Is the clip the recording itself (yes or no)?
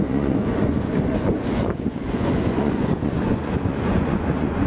no